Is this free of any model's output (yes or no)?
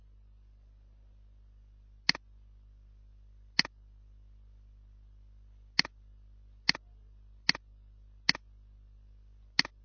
yes